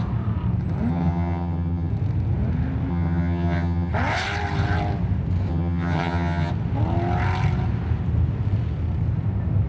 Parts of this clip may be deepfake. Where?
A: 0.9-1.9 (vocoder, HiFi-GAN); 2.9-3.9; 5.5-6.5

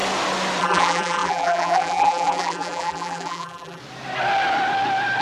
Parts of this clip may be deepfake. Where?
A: 0.6-3.8 (vocoder, BigVGAN v2)